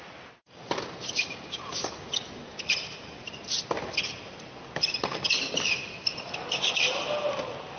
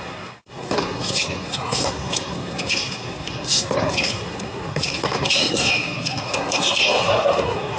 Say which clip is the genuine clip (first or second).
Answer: first